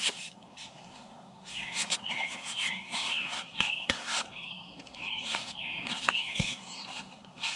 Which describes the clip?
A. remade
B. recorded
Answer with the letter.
A